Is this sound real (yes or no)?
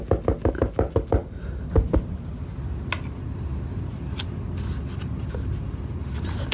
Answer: yes